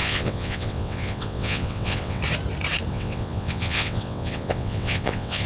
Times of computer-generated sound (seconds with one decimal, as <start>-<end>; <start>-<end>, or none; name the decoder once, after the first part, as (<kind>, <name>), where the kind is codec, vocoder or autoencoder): 0.0-2.2 (vocoder, WaveNeXt); 2.9-5.5